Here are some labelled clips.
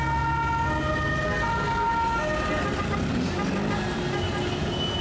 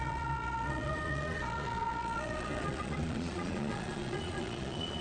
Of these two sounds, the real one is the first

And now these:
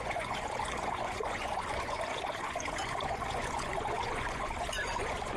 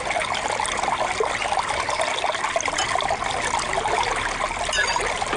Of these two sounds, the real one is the second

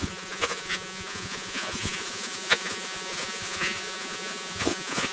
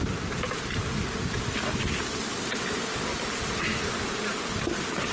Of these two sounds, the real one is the second